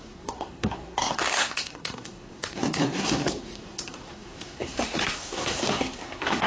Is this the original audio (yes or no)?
no